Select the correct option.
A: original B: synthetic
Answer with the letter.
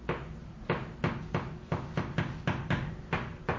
A